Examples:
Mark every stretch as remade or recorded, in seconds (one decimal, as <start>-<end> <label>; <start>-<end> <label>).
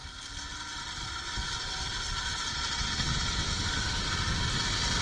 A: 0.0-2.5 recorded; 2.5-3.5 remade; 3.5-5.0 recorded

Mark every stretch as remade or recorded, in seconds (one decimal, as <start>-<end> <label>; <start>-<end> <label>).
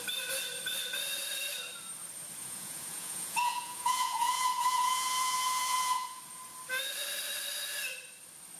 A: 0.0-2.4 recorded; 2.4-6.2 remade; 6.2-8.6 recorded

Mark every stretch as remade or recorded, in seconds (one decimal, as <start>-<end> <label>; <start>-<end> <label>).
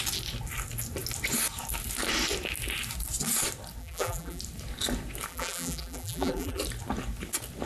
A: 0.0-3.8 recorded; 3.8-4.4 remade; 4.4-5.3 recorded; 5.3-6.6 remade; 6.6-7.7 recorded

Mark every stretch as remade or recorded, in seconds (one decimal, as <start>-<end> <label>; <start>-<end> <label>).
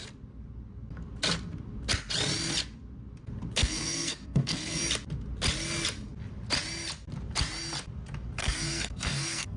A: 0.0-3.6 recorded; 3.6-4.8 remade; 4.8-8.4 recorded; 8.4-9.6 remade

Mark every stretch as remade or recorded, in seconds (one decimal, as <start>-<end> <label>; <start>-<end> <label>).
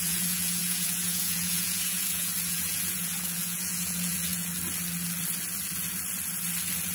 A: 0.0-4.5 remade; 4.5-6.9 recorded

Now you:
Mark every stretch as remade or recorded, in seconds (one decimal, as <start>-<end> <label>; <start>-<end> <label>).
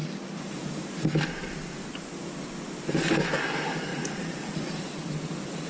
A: 0.0-3.9 recorded; 3.9-4.8 remade; 4.8-5.7 recorded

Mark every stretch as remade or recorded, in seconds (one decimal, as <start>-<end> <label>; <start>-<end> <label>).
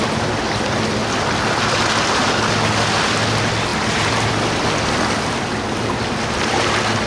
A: 0.0-3.7 recorded; 3.7-4.3 remade; 4.3-7.1 recorded